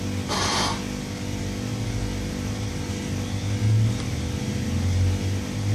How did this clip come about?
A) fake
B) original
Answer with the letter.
B